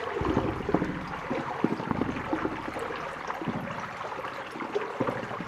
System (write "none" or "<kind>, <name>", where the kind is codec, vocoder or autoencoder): none